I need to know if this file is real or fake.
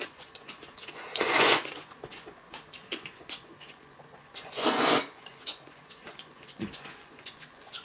fake